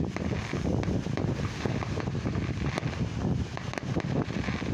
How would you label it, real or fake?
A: real